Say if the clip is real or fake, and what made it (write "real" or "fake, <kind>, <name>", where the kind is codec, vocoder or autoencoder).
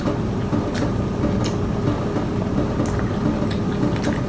real